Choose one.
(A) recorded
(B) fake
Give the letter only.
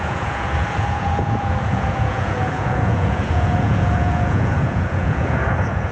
B